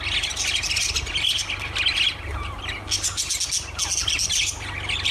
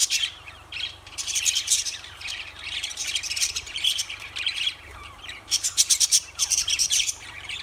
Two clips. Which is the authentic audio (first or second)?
first